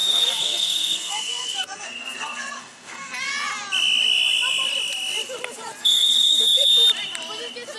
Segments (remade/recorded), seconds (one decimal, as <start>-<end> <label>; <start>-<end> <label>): 0.0-3.3 remade; 3.3-5.8 recorded; 5.8-6.7 remade; 6.7-7.8 recorded